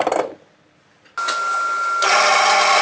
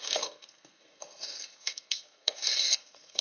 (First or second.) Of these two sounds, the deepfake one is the second